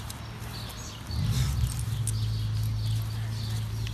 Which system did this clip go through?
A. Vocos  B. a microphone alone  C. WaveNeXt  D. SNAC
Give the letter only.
B